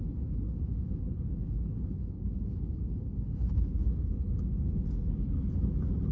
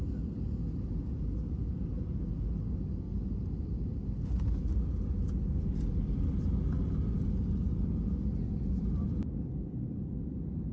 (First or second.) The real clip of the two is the second